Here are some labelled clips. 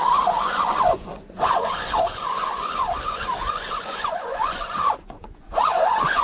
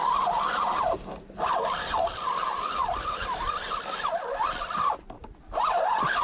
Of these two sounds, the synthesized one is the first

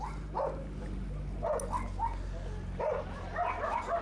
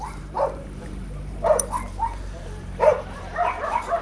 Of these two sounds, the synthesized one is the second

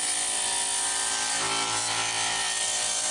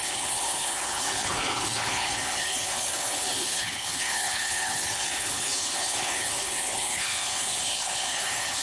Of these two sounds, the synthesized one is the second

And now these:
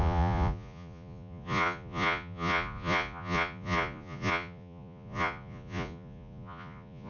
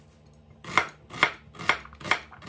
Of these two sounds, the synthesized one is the first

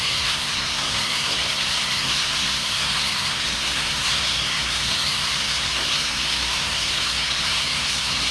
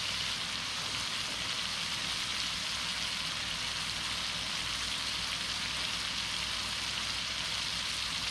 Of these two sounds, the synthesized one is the first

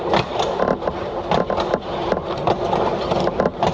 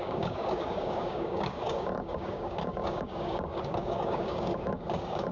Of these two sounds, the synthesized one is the second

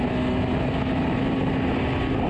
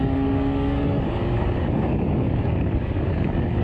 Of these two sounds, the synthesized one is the second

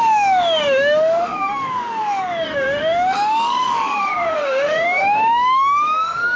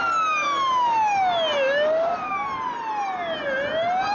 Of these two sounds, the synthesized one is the first